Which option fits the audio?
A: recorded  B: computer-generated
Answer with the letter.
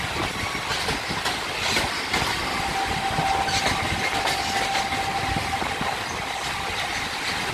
A